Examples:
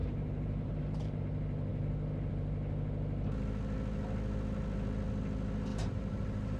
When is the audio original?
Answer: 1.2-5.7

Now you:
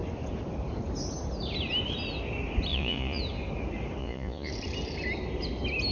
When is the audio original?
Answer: 0.0-2.7; 3.2-4.0; 4.5-5.9

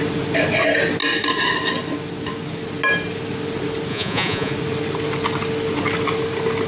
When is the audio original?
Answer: 0.0-3.9; 4.5-6.7

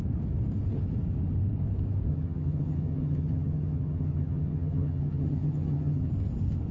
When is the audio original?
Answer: 0.0-2.1; 6.1-6.7

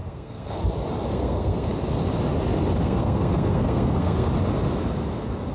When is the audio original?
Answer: 0.6-1.1; 1.7-2.8; 4.3-5.5

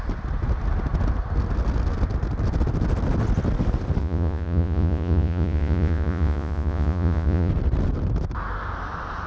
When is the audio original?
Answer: 0.0-4.0; 7.5-9.3